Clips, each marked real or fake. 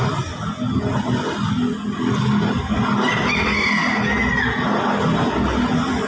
real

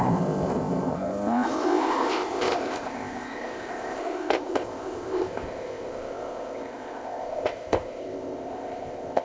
fake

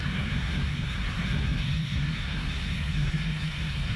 fake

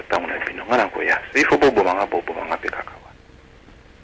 real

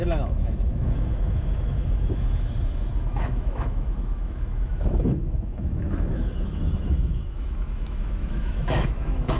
fake